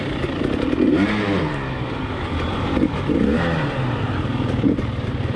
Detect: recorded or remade remade